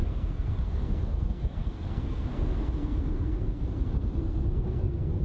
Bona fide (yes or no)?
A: no